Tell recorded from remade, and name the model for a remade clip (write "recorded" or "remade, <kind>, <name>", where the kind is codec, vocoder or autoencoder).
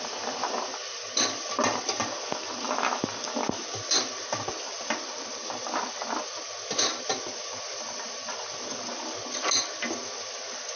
recorded